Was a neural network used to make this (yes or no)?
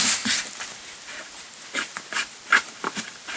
no